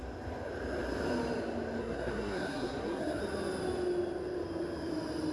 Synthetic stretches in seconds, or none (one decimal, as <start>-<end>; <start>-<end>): 1.8-3.2